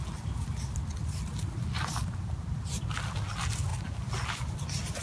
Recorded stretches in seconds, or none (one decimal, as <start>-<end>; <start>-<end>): 0.0-5.0